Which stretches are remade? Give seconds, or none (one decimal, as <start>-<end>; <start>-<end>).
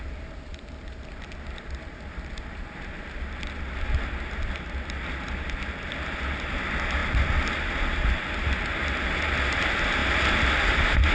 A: none